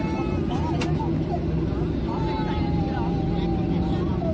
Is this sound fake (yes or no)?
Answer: no